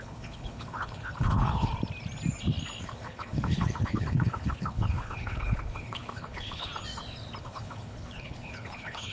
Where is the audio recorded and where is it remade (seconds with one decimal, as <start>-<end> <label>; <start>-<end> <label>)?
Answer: 0.0-1.7 remade; 1.7-2.8 recorded; 2.8-6.7 remade; 6.7-7.4 recorded; 7.4-9.1 remade